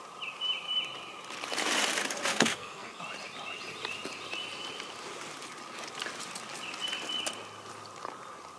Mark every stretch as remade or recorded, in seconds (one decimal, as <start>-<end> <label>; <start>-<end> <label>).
0.0-2.3 recorded; 2.3-3.0 remade; 3.0-8.6 recorded